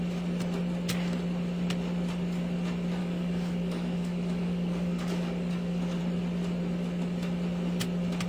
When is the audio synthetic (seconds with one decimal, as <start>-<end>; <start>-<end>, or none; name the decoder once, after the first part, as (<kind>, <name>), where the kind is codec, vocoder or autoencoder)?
3.0-6.0 (codec, DAC)

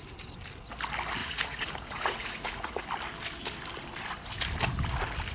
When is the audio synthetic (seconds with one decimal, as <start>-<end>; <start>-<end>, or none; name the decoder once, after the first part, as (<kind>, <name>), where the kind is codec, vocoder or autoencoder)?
1.2-2.8 (vocoder, Vocos)

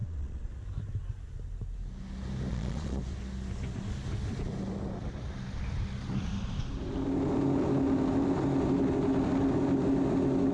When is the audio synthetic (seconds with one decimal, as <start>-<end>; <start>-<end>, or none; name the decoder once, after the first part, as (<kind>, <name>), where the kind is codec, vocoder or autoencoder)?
0.0-0.5 (vocoder, Vocos); 2.5-3.0

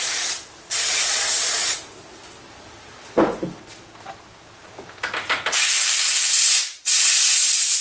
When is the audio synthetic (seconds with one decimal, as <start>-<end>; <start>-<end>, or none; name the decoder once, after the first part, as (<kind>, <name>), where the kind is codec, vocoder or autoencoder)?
0.6-1.8 (vocoder, Vocos)